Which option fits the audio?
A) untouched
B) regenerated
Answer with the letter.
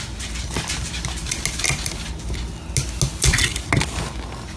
A